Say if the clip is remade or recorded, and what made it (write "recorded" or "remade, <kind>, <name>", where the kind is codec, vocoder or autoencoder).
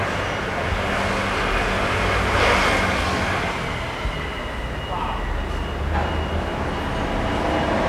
recorded